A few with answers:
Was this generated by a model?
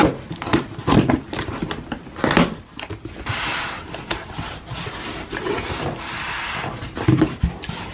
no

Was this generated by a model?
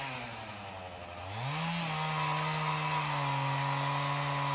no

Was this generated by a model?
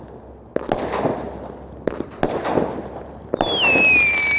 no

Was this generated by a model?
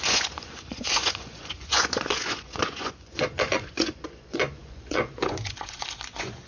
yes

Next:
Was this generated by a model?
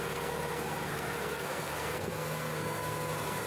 yes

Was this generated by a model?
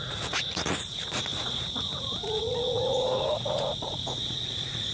yes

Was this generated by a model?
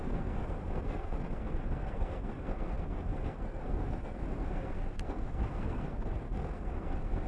yes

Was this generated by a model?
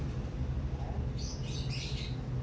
no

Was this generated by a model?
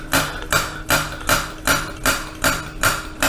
no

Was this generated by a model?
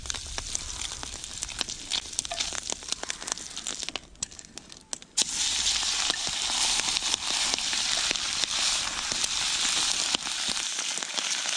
no